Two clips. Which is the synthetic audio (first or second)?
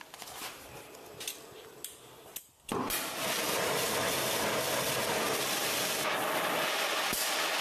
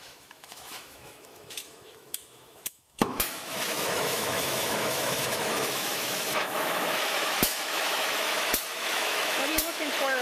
second